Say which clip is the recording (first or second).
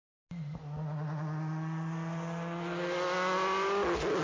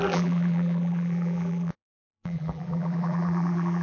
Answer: first